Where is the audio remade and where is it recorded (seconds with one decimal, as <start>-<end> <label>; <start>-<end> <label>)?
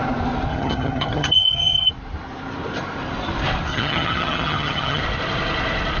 0.0-0.5 recorded; 0.5-1.9 remade; 1.9-3.7 recorded; 3.7-5.0 remade; 5.0-6.0 recorded